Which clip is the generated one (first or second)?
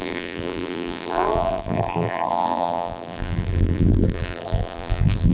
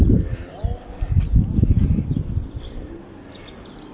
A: first